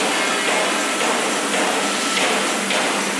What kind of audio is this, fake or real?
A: real